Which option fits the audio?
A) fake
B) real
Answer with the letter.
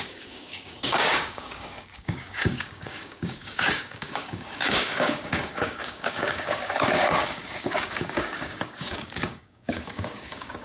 A